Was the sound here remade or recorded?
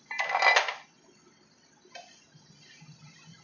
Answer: recorded